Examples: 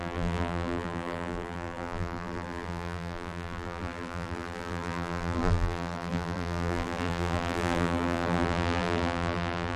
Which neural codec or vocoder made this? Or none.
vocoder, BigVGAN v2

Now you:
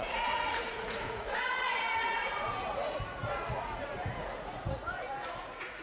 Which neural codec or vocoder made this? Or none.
vocoder, Vocos